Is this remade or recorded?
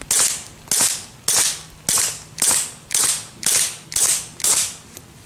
recorded